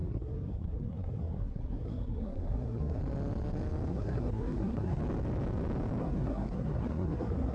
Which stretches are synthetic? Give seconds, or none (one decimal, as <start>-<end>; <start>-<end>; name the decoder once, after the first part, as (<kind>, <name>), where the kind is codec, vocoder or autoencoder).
0.0-3.0 (codec, SNAC); 3.9-5.0; 6.0-7.5